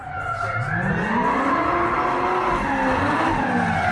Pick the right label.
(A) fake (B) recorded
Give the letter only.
B